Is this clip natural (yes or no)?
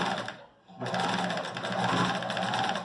yes